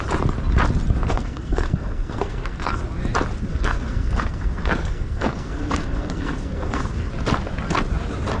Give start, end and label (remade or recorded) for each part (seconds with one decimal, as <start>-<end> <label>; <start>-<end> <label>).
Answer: 0.0-1.1 recorded; 1.1-2.8 remade; 2.8-3.5 recorded; 3.5-7.1 remade; 7.1-8.4 recorded